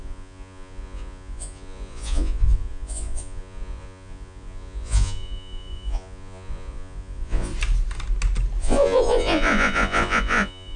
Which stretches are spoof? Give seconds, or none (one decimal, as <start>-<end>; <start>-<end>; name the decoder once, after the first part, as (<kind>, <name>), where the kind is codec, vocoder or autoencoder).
0.0-7.5 (vocoder, Vocos); 8.6-10.8